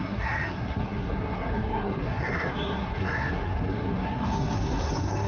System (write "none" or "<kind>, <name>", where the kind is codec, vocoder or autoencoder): codec, SNAC